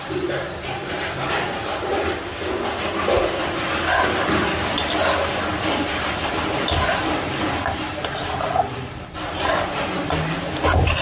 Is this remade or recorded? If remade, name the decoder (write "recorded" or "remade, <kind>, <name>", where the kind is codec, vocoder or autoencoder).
recorded